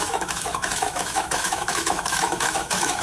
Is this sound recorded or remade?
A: remade